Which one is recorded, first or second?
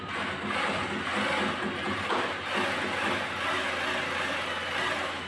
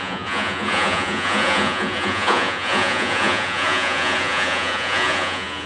first